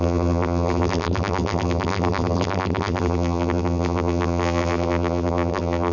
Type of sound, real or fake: fake